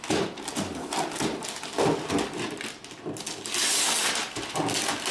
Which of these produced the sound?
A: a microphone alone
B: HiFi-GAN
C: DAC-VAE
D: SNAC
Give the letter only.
A